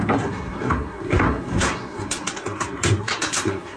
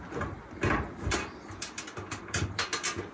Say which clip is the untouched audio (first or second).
second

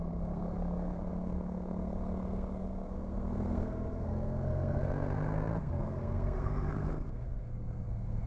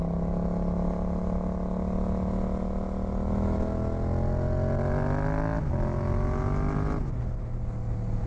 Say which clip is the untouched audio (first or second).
second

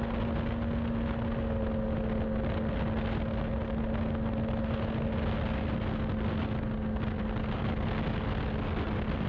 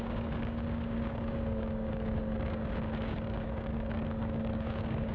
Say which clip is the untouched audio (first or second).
first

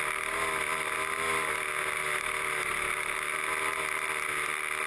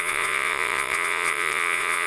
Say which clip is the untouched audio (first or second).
first